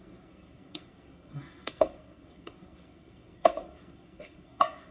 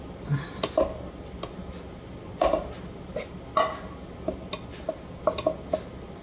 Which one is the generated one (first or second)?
first